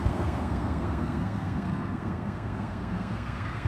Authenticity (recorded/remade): remade